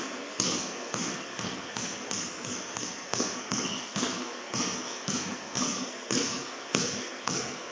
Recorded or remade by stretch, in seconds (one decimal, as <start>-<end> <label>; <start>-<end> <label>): 0.0-7.7 remade